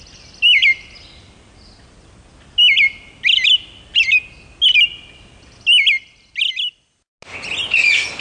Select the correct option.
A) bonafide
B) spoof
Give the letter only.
A